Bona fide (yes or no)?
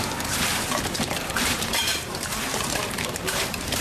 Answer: no